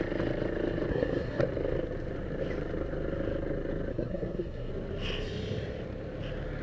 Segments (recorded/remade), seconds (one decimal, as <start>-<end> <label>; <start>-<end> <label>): 0.0-0.9 recorded; 0.9-1.4 remade; 1.4-3.9 recorded; 3.9-4.7 remade; 4.7-6.6 recorded